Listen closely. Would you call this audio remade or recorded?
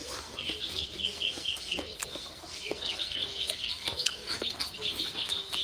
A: remade